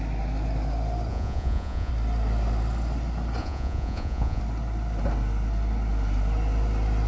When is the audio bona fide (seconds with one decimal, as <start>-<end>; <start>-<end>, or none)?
0.0-1.1; 1.9-3.4; 4.4-7.1